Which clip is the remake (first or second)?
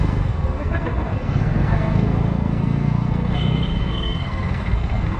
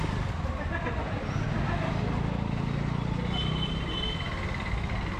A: first